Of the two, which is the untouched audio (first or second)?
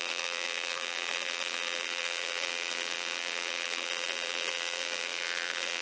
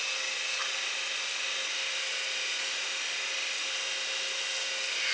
second